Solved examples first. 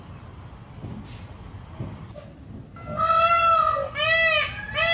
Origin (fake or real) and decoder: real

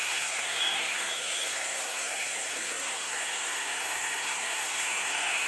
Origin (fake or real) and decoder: fake, codec, SNAC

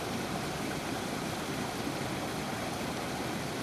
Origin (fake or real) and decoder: real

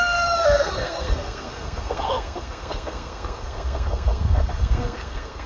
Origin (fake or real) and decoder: fake, codec, SNAC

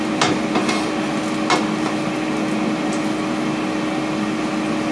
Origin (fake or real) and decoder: real